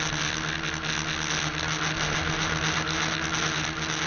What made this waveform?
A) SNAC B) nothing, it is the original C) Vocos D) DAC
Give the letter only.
B